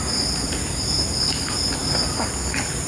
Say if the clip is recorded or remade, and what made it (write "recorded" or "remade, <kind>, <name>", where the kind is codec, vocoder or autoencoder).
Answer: recorded